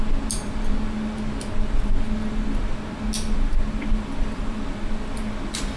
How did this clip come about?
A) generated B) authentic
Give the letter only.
B